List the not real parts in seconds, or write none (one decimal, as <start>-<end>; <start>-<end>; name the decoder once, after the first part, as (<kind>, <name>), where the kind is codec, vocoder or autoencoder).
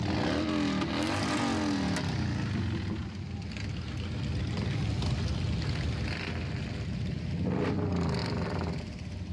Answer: 8.2-8.8 (vocoder, BigVGAN v2)